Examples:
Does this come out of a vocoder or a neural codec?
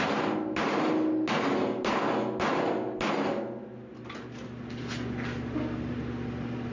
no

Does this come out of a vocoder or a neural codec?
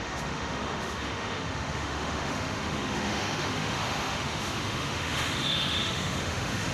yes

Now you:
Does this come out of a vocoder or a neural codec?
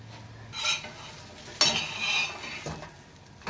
no